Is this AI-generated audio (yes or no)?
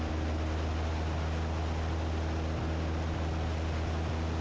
no